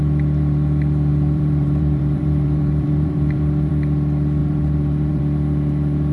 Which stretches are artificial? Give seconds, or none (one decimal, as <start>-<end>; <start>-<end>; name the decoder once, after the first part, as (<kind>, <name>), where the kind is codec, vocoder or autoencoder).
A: 1.1-3.7 (vocoder, BigVGAN v2); 4.4-5.2